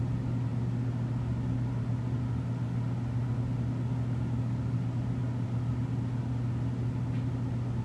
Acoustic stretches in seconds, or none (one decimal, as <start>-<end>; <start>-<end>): 0.0-7.8